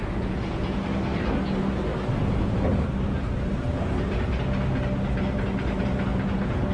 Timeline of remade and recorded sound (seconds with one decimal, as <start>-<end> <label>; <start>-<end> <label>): 0.0-0.8 remade; 0.8-6.7 recorded